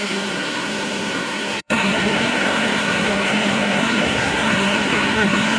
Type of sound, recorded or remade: remade